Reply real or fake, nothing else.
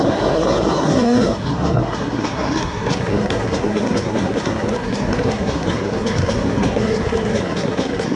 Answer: fake